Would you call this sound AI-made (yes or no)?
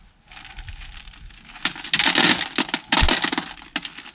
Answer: no